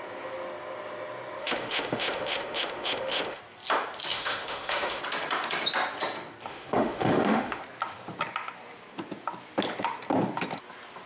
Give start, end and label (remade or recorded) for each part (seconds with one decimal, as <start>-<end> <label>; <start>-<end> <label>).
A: 0.0-1.4 recorded; 1.4-3.4 remade; 3.4-4.1 recorded; 4.1-5.0 remade; 5.0-6.5 recorded; 6.5-7.6 remade; 7.6-11.1 recorded